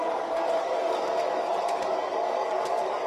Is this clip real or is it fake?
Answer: fake